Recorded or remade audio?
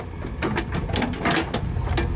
recorded